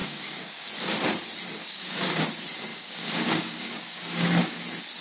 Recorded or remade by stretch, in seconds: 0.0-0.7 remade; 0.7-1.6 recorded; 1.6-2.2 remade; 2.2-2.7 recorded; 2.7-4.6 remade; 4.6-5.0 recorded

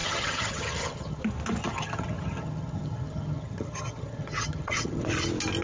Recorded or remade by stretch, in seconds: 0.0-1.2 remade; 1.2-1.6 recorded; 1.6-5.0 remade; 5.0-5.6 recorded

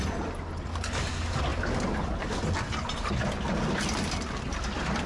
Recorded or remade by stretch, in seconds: 0.0-5.1 recorded

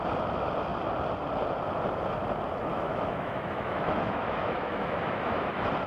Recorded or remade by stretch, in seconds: 0.0-2.7 recorded; 2.7-5.5 remade; 5.5-5.9 recorded